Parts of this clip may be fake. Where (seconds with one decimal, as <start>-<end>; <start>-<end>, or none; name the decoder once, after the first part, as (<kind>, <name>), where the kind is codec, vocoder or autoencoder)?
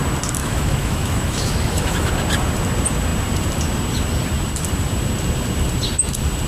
0.4-2.1 (autoencoder, DAC-VAE)